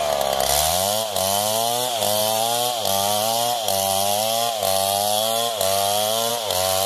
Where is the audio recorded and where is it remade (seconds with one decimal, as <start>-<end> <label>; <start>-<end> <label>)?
0.0-6.9 recorded